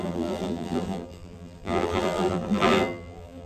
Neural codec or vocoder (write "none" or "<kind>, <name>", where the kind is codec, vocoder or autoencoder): vocoder, BigVGAN v2